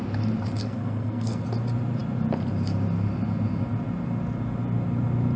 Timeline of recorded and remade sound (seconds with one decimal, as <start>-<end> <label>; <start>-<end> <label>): 0.0-0.6 recorded; 0.6-1.4 remade; 1.4-5.4 recorded